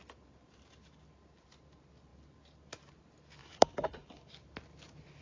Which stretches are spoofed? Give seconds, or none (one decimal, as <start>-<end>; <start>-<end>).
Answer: 3.4-4.3